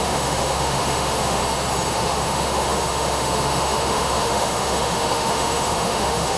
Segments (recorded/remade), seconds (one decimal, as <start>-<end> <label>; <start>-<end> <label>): 0.0-1.4 remade; 1.4-1.9 recorded; 1.9-6.4 remade